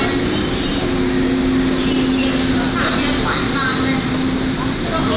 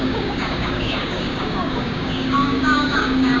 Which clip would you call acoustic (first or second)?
first